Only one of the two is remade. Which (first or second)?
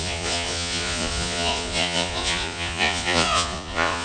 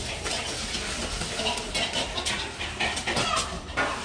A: first